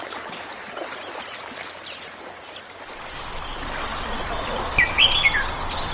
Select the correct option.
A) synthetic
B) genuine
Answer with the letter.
B